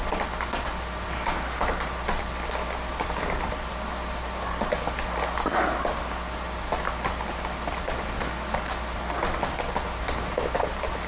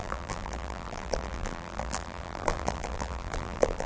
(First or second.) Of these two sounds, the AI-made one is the second